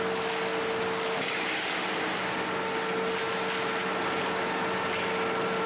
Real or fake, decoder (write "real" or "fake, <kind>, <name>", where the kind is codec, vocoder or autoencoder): real